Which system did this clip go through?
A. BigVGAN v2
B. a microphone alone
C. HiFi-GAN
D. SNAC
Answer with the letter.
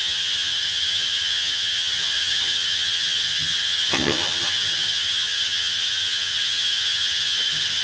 C